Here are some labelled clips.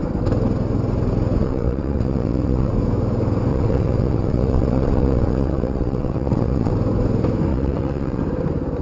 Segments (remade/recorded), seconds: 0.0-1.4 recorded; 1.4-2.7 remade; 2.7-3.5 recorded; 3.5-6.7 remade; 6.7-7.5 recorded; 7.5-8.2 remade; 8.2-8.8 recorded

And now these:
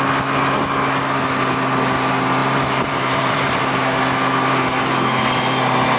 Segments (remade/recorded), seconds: 0.0-2.4 recorded; 2.4-3.6 remade; 3.6-6.0 recorded

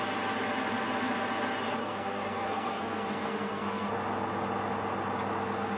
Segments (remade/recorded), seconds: 0.0-1.8 recorded; 1.8-3.9 remade; 3.9-5.8 recorded

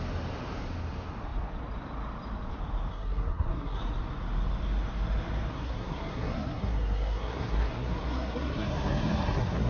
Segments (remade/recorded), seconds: 0.0-2.9 recorded; 2.9-3.8 remade; 3.8-5.5 recorded; 5.5-9.7 remade